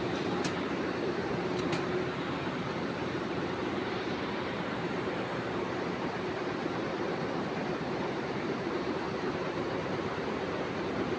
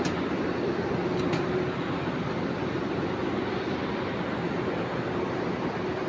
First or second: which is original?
second